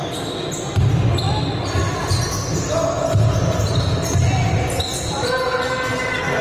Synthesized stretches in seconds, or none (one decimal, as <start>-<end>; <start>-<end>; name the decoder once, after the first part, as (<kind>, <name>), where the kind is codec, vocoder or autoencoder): none